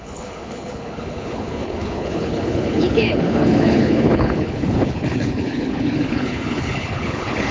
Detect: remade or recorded remade